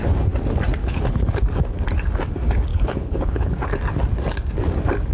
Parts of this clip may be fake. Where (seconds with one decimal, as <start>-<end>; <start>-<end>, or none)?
0.8-1.4; 2.7-3.5